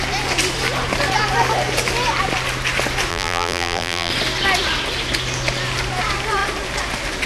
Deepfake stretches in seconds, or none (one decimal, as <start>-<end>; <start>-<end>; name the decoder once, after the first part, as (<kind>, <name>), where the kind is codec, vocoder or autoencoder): 3.1-4.1 (vocoder, BigVGAN v2)